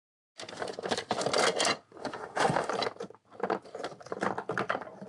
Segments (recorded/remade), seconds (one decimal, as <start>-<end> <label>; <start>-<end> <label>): 0.0-2.0 recorded; 2.0-2.7 remade; 2.7-5.1 recorded